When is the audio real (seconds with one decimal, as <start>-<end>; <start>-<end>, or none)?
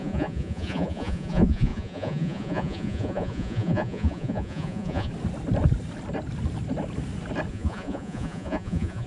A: 5.1-7.5